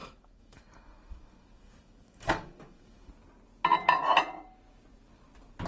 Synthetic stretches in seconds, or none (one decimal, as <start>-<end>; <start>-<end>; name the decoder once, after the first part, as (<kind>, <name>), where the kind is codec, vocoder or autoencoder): 0.0-3.1 (autoencoder, DAC-VAE)